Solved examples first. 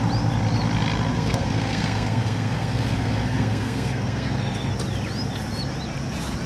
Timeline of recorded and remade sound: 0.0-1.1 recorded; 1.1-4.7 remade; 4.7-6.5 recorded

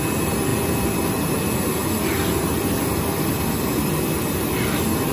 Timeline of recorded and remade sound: 0.0-5.1 recorded

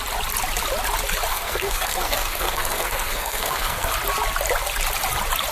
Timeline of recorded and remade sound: 0.0-1.3 recorded; 1.3-3.9 remade; 3.9-5.5 recorded

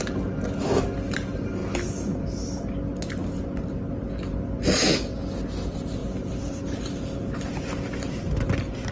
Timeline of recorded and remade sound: 0.0-8.9 recorded

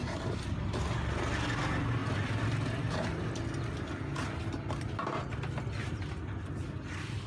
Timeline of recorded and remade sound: 0.0-7.3 recorded

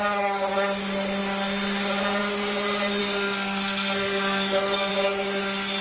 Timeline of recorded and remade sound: 0.0-3.0 recorded; 3.0-4.9 remade; 4.9-5.8 recorded

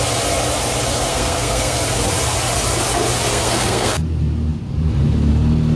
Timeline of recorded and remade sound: 0.0-1.1 recorded; 1.1-1.8 remade; 1.8-3.3 recorded; 3.3-4.0 remade; 4.0-5.8 recorded

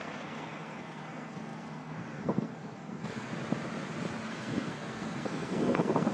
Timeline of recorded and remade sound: 0.0-3.3 remade; 3.3-4.3 recorded; 4.3-6.1 remade